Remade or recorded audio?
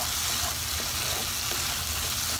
recorded